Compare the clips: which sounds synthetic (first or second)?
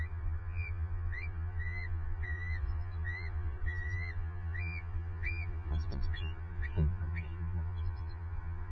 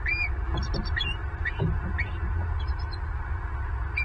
first